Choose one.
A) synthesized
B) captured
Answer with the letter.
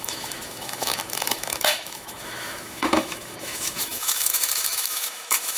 A